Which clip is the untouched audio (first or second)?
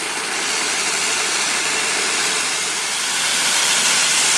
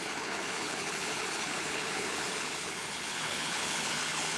first